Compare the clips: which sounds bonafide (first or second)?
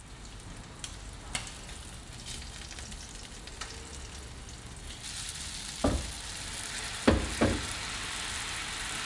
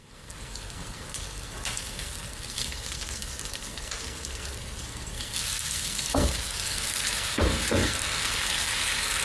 first